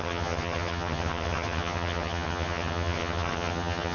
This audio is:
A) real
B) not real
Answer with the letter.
B